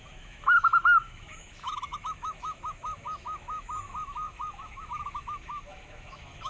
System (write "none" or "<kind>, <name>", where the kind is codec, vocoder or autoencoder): autoencoder, DAC-VAE